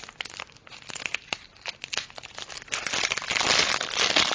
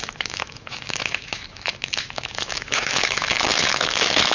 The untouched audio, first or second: first